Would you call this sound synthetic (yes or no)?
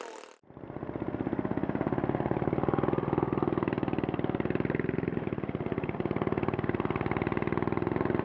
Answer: no